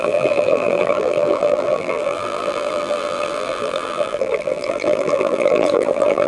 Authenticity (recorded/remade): remade